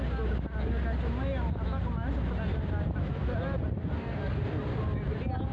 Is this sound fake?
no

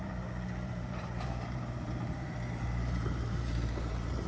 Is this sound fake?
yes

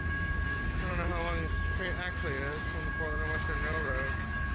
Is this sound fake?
yes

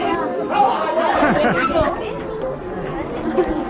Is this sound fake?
yes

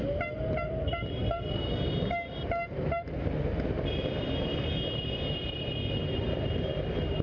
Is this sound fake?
yes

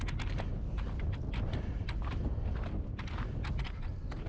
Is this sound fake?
no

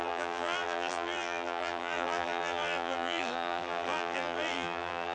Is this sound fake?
yes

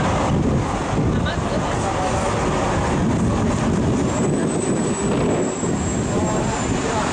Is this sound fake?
no